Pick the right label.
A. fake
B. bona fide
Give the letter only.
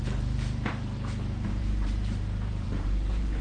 A